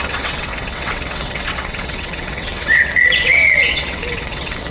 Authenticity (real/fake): fake